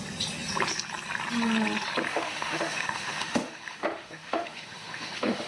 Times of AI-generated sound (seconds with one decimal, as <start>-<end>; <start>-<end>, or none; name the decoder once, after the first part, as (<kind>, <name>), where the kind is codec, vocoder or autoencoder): 2.1-5.5 (autoencoder, DAC-VAE)